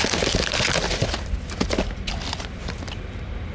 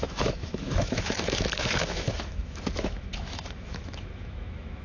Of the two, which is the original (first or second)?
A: first